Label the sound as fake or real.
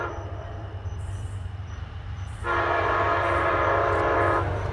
fake